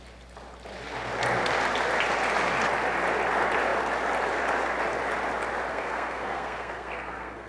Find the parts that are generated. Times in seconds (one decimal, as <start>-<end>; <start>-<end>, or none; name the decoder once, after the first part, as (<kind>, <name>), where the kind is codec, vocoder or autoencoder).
5.7-7.5 (codec, SNAC)